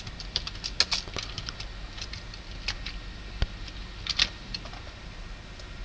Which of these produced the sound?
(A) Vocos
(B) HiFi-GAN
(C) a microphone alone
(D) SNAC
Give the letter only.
C